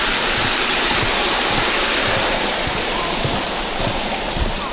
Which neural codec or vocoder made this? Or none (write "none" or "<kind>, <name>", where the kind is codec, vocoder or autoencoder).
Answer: none